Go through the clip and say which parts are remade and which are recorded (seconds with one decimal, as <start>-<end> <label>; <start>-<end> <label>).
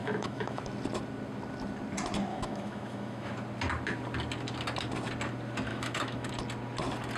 0.0-0.6 remade; 0.6-2.3 recorded; 2.3-3.3 remade; 3.3-5.7 recorded; 5.7-6.3 remade; 6.3-7.2 recorded